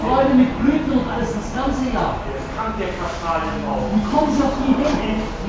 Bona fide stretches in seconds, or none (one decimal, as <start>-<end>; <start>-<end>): 0.0-5.5